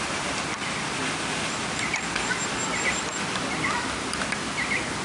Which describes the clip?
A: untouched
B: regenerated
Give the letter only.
A